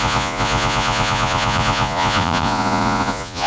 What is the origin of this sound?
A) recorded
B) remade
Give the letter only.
B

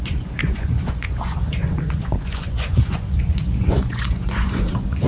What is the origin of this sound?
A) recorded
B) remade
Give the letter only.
B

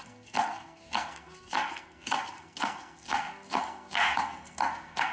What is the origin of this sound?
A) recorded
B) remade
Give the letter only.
B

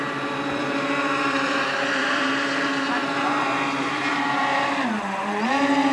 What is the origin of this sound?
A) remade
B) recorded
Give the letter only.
A